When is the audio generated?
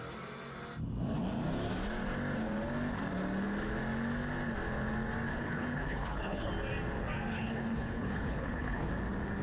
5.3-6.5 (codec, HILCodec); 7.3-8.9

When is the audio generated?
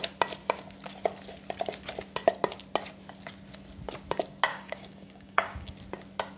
4.5-5.7 (codec, DAC)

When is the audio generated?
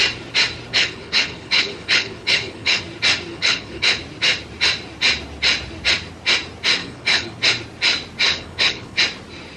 0.7-2.8 (codec, HILCodec); 3.3-4.0; 6.8-7.4; 8.3-9.0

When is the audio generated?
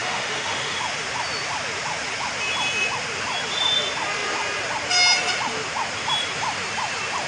0.0-0.8 (autoencoder, DAC-VAE)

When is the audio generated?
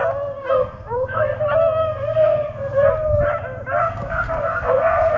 0.4-1.4 (codec, SNAC); 1.8-2.9; 3.8-5.2